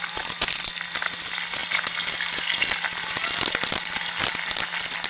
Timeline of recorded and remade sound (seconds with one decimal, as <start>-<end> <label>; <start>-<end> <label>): 0.0-5.1 recorded